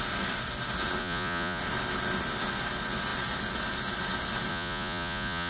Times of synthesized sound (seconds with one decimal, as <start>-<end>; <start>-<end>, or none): 1.0-1.6; 4.5-5.5